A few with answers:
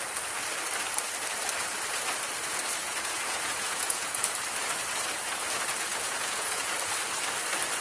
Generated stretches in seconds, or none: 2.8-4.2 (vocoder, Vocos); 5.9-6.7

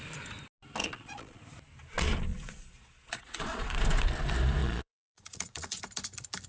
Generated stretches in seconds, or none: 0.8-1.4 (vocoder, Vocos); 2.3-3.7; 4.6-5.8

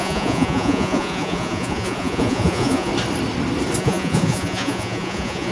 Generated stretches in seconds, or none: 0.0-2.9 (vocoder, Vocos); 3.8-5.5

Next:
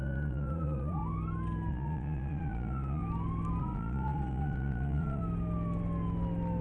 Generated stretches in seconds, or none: 0.0-1.0 (vocoder, Vocos); 1.7-3.0; 3.6-5.2

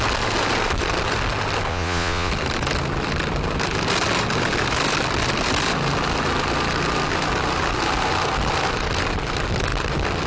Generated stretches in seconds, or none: 1.7-2.3 (vocoder, Vocos)

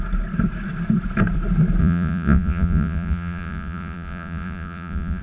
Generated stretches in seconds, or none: 1.8-5.2 (vocoder, Vocos)

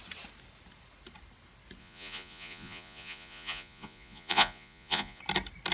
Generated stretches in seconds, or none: 1.8-5.2 (vocoder, Vocos)